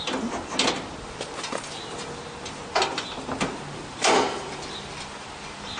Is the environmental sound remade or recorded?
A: recorded